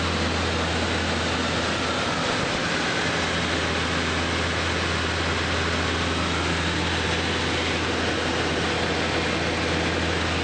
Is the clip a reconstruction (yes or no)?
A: no